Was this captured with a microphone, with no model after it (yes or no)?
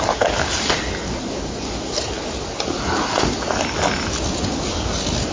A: yes